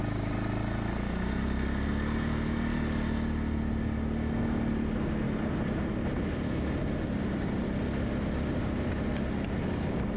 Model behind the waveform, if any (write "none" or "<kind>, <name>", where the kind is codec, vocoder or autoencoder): none